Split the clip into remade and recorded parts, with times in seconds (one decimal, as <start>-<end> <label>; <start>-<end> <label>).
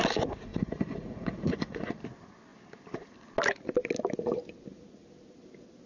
0.0-0.5 recorded; 0.5-2.0 remade; 2.0-5.9 recorded